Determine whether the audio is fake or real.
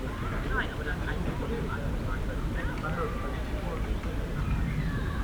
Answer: fake